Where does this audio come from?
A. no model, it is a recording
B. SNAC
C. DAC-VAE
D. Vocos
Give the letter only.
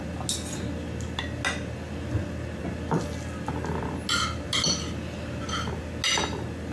A